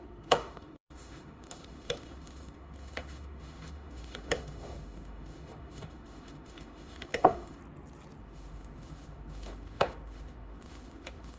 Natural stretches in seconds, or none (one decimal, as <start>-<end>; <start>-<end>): 7.6-8.2